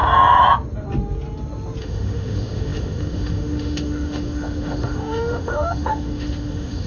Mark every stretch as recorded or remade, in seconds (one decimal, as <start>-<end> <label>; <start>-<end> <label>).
0.0-1.8 recorded; 1.8-6.9 remade